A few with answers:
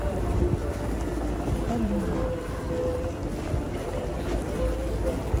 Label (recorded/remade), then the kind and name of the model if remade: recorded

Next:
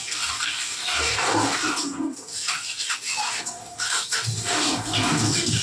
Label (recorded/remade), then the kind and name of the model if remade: remade, codec, DAC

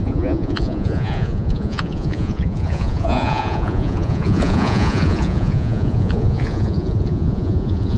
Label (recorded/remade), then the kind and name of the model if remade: remade, vocoder, Vocos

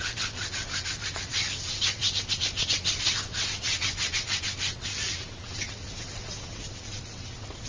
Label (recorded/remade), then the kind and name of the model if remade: remade, vocoder, WaveNeXt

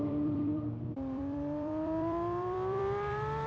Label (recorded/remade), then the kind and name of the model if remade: remade, vocoder, BigVGAN v2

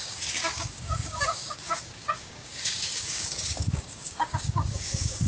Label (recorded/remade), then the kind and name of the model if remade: remade, codec, DAC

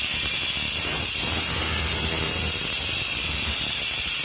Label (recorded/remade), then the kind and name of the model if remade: remade, vocoder, BigVGAN v2